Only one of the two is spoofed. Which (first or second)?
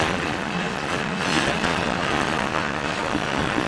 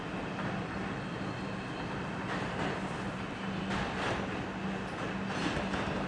first